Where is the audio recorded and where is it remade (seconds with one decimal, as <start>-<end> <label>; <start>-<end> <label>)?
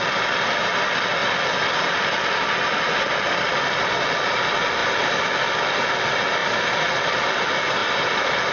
0.0-1.2 recorded; 1.2-1.8 remade; 1.8-4.8 recorded; 4.8-5.6 remade; 5.6-6.4 recorded; 6.4-7.2 remade; 7.2-8.5 recorded